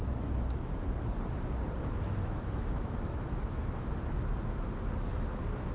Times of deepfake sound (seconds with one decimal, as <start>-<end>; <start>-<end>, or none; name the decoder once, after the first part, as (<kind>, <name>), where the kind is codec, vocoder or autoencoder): 2.2-3.9 (autoencoder, DAC-VAE)